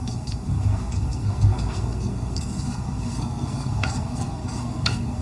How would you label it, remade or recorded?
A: remade